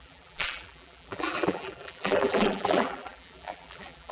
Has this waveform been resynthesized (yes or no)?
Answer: yes